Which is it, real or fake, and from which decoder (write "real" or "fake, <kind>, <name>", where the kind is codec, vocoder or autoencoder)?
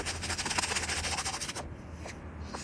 real